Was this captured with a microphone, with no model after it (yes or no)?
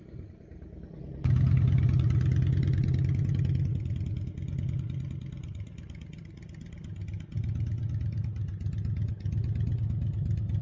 yes